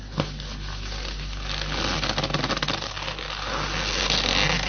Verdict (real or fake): real